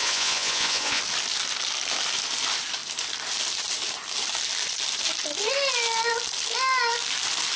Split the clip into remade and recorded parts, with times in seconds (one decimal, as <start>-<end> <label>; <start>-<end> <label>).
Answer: 0.0-1.0 remade; 1.0-7.6 recorded